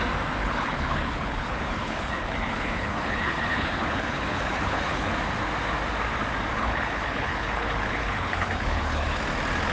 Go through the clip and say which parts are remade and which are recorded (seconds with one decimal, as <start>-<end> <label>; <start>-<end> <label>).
0.0-0.4 recorded; 0.4-5.1 remade; 5.1-6.5 recorded; 6.5-9.2 remade; 9.2-9.7 recorded